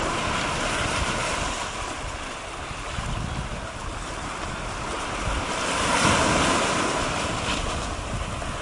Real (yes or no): yes